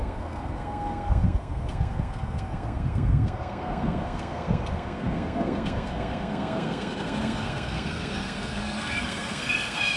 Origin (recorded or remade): remade